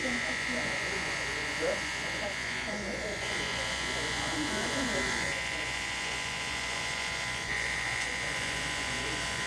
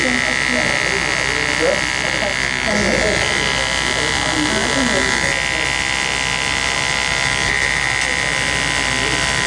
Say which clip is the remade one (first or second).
first